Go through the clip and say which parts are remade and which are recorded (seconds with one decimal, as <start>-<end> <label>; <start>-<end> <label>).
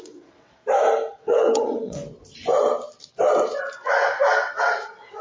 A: 0.0-0.6 remade; 0.6-1.1 recorded; 1.1-2.0 remade; 2.0-4.4 recorded; 4.4-5.2 remade